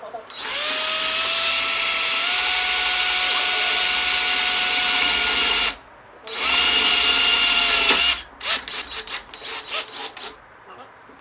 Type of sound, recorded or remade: recorded